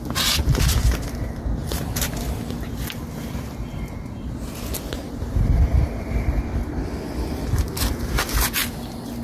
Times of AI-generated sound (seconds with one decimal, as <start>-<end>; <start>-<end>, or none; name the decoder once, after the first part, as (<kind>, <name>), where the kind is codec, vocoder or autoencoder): 1.6-6.7 (vocoder, BigVGAN v2)